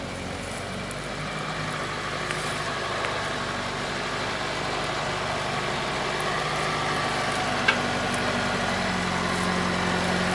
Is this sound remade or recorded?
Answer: recorded